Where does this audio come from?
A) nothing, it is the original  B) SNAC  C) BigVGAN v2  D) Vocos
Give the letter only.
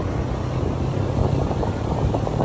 A